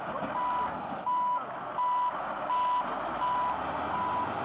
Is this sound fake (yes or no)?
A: no